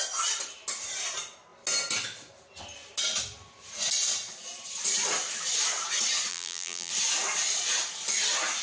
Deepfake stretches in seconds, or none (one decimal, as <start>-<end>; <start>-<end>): 6.3-6.9